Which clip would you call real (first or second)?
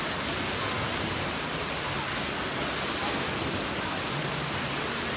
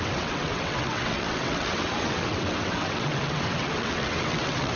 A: first